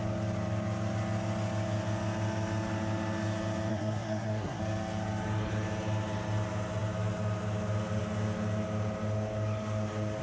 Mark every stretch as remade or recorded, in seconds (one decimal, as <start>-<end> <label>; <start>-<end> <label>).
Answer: 0.0-3.7 recorded; 3.7-4.6 remade; 4.6-10.2 recorded